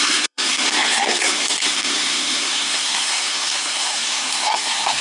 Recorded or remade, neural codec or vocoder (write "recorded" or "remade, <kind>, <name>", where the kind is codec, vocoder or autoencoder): remade, codec, SNAC